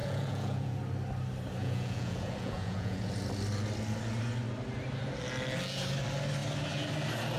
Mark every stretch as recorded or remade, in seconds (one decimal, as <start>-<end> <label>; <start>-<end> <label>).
0.0-0.8 remade; 0.8-1.6 recorded; 1.6-3.1 remade; 3.1-7.4 recorded